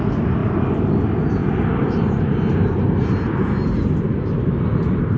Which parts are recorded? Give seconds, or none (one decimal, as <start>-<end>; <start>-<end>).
0.0-5.2